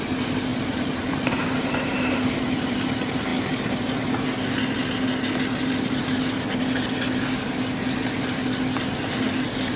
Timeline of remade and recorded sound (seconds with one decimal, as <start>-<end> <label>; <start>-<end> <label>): 0.0-0.5 recorded; 0.5-2.6 remade; 2.6-9.8 recorded